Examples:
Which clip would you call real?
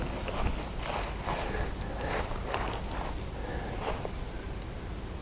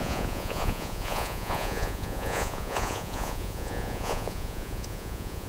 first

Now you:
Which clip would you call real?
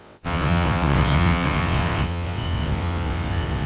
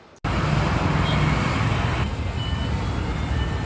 second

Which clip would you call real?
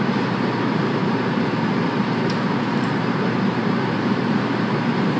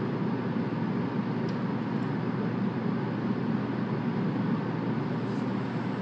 second